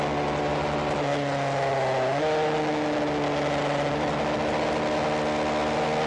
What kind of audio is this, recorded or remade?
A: recorded